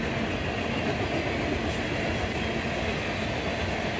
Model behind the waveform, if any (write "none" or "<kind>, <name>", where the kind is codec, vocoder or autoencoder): none